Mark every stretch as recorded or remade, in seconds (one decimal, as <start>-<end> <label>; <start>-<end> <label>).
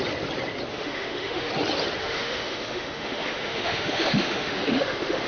0.0-0.7 recorded; 0.7-1.5 remade; 1.5-2.0 recorded; 2.0-5.3 remade